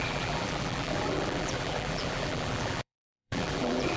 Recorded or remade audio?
remade